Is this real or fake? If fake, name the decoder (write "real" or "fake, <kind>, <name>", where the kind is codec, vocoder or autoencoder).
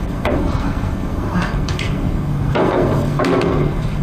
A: fake, codec, SNAC